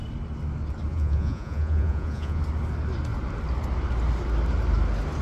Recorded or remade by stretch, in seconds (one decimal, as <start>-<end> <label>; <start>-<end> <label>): 0.0-0.9 recorded; 0.9-2.4 remade; 2.4-5.2 recorded